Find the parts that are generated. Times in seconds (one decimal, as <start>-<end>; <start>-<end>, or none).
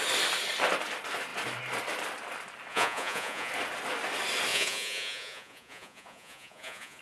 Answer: 2.7-3.5; 4.5-7.0